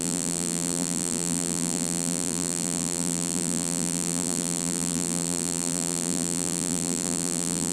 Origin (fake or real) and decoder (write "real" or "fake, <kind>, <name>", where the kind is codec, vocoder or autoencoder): fake, vocoder, BigVGAN v2